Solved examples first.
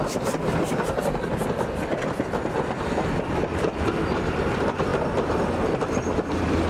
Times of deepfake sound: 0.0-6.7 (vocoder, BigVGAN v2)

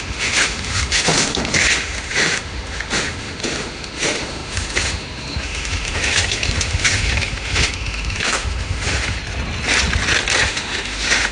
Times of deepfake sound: 0.0-9.2 (autoencoder, DAC-VAE); 10.4-11.3

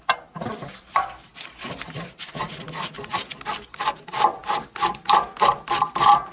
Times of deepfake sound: none

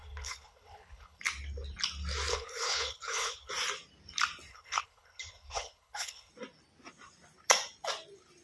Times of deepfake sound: 0.0-1.2 (codec, HILCodec); 2.3-3.5; 4.5-6.3

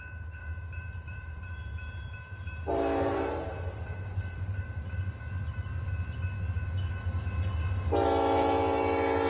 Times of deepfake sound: 0.4-5.0 (vocoder, BigVGAN v2)

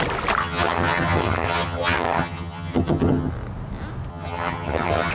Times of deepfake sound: 0.4-3.3 (vocoder, HiFi-GAN); 4.1-5.1